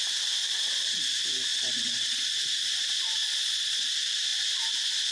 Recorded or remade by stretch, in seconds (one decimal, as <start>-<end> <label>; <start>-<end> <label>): 0.0-0.4 recorded; 0.4-1.0 remade; 1.0-1.5 recorded; 1.5-2.2 remade; 2.2-3.2 recorded; 3.2-3.9 remade; 3.9-5.1 recorded